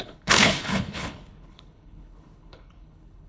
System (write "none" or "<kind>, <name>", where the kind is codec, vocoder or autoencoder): codec, HILCodec